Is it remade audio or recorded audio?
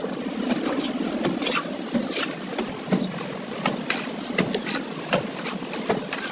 recorded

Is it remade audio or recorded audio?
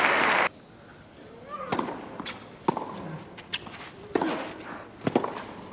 recorded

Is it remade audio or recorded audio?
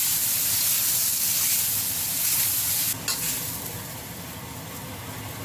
recorded